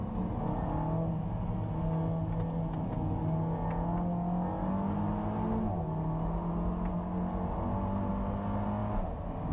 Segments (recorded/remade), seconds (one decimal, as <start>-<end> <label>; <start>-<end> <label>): 0.0-9.5 recorded